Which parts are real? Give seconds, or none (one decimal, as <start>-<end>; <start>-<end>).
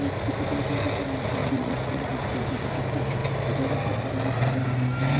0.0-1.4; 2.2-5.2